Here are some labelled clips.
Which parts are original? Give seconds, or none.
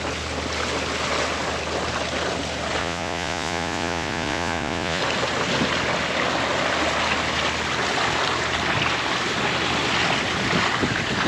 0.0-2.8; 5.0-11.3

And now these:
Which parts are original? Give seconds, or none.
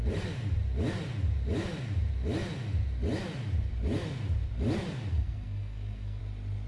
0.0-5.1; 6.2-6.7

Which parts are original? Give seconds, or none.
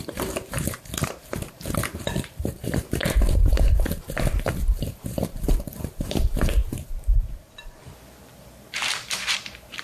3.0-4.8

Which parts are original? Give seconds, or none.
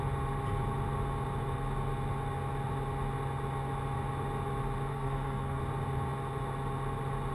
0.0-4.9; 5.6-7.3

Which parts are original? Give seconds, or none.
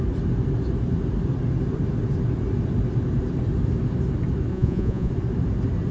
0.0-4.5; 5.1-5.9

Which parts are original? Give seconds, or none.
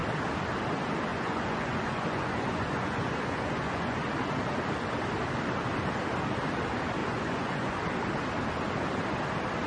0.0-1.1; 4.0-7.0; 7.8-9.7